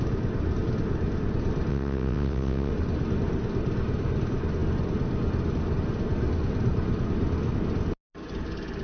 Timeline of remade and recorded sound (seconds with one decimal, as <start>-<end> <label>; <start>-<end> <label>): 0.0-1.7 recorded; 1.7-2.7 remade; 2.7-8.8 recorded